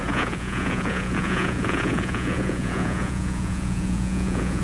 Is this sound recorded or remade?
remade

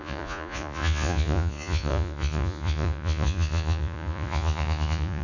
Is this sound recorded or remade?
remade